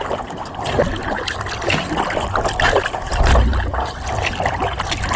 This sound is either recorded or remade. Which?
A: recorded